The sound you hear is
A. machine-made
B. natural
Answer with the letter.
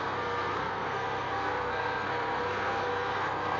A